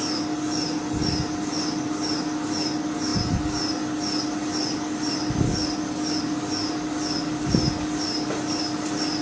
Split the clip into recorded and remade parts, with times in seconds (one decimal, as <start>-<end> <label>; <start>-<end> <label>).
0.0-9.2 recorded